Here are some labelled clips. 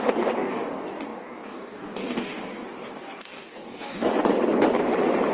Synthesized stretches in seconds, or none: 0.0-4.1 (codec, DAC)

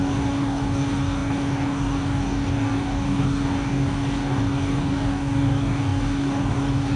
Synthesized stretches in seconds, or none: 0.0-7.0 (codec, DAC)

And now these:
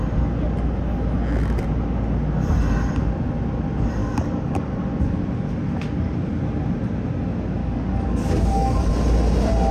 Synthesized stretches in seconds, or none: 4.0-4.8 (codec, DAC); 7.6-8.9